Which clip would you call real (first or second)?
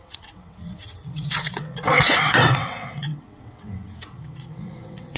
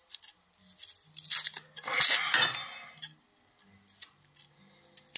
second